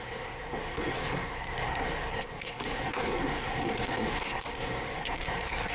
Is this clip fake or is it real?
fake